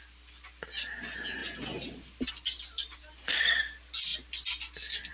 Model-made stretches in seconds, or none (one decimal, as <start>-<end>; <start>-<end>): none

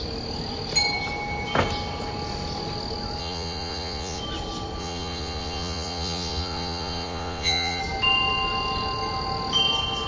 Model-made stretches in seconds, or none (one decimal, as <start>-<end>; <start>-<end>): 3.2-4.2; 4.8-7.8

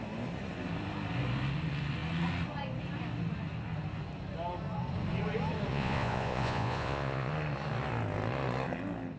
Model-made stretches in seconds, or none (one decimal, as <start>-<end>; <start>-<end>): 5.7-7.3

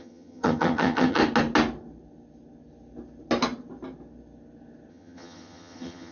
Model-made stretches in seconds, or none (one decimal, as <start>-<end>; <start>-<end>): 0.0-1.2; 4.9-6.1

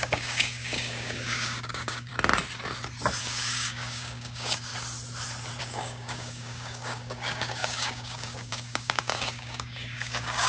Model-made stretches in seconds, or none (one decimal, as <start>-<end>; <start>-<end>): 0.0-2.1; 3.2-4.7; 5.6-10.5